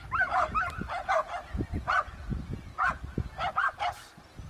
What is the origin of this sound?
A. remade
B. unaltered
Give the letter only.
B